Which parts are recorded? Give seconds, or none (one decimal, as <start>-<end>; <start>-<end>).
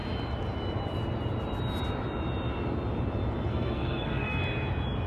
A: 0.0-3.5; 4.4-5.1